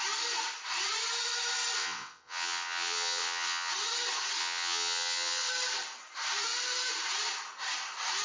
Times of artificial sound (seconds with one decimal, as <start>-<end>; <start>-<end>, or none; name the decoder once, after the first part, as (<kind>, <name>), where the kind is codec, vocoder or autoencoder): 1.8-3.7 (vocoder, WaveNeXt); 4.4-5.5